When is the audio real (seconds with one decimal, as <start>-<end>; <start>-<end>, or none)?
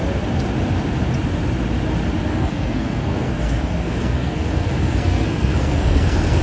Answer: 0.0-2.3